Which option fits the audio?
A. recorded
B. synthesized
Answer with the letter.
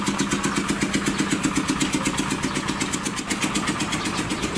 A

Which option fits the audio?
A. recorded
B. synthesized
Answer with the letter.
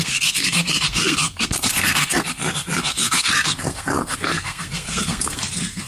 B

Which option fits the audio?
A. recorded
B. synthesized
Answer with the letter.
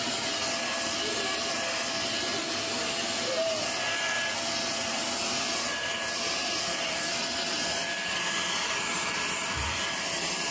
A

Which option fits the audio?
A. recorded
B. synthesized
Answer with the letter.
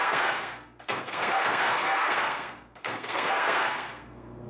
B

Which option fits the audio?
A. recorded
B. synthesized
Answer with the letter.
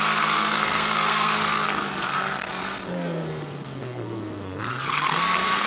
B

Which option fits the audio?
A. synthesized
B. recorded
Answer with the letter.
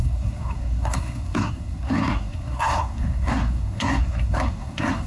A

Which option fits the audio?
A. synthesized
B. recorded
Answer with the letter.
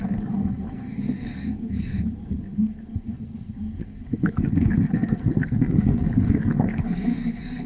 A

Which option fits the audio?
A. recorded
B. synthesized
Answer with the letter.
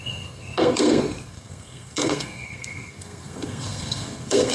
B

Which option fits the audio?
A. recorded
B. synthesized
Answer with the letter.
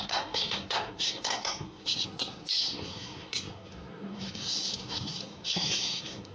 B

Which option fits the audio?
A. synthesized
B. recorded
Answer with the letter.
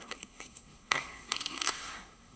A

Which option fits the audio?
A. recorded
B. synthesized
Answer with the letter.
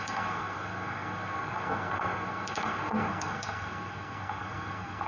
B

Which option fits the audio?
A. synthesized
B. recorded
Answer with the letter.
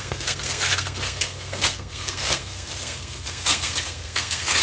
A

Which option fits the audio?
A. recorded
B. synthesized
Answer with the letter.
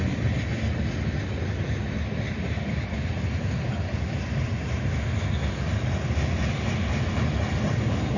A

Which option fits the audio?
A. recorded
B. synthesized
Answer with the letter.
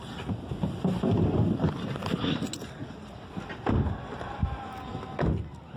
A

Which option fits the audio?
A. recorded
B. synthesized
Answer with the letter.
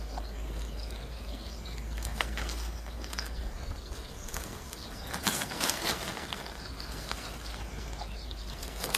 B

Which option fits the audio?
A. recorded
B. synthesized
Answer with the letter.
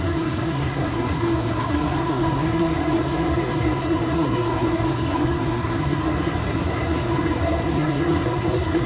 B